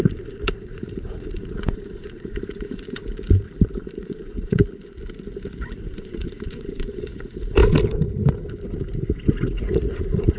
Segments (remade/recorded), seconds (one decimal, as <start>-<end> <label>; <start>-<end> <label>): 0.0-3.0 remade; 3.0-3.8 recorded; 3.8-4.6 remade; 4.6-5.6 recorded; 5.6-7.6 remade; 7.6-9.6 recorded; 9.6-10.4 remade